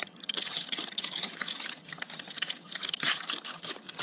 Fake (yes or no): yes